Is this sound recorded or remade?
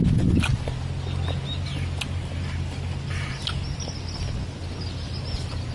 recorded